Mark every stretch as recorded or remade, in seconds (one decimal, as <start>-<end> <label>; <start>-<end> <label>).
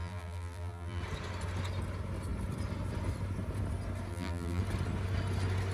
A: 0.0-1.0 remade; 1.0-4.1 recorded; 4.1-4.6 remade; 4.6-5.7 recorded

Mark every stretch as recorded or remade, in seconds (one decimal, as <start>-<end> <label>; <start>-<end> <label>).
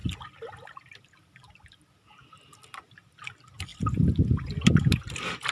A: 0.0-5.5 recorded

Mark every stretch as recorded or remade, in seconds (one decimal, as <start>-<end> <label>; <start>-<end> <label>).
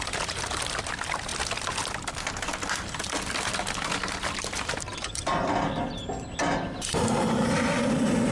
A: 0.0-8.3 recorded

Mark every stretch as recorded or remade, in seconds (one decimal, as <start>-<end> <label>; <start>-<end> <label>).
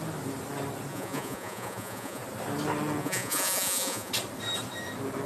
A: 0.0-0.9 recorded; 0.9-2.2 remade; 2.2-3.0 recorded; 3.0-4.1 remade; 4.1-5.3 recorded